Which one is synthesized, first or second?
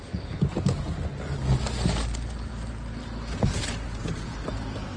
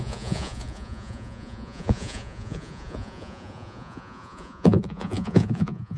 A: second